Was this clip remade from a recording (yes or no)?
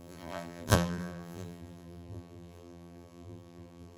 yes